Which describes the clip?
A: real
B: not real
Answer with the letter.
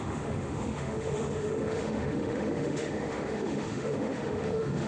B